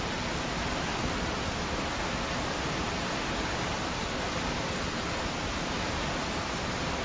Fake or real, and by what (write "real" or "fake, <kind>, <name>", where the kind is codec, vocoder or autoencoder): real